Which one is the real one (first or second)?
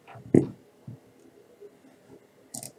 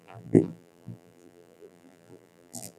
first